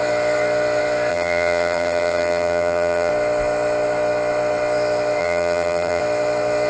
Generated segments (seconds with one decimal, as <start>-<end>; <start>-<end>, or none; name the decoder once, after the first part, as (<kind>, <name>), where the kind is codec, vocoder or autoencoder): 1.1-3.1 (vocoder, BigVGAN v2); 5.2-6.0